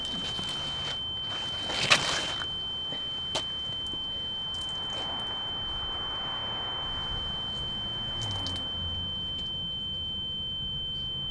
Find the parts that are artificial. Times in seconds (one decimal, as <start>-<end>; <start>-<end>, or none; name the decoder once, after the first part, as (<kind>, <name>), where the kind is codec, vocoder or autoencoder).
none